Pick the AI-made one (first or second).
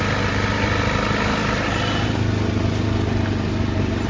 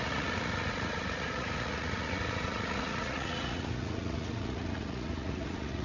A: second